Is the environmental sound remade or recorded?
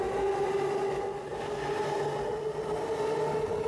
recorded